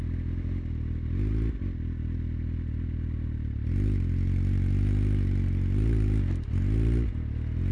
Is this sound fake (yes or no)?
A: no